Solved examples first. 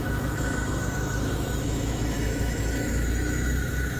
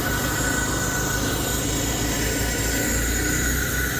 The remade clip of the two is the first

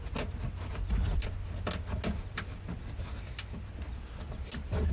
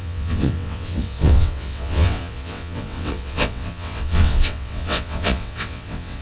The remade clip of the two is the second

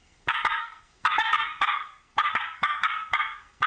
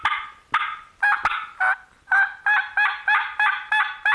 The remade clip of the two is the first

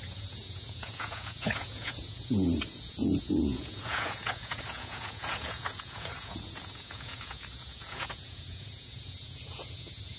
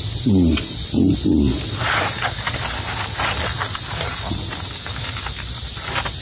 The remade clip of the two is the first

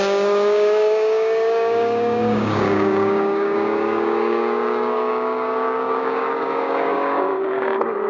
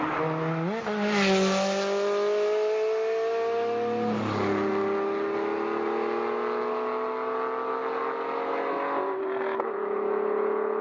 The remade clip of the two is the first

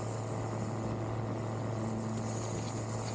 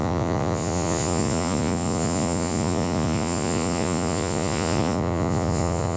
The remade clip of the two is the second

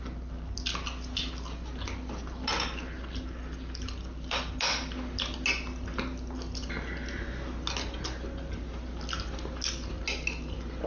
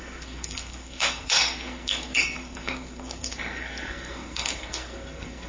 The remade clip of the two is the second